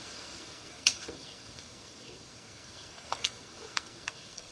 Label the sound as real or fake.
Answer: fake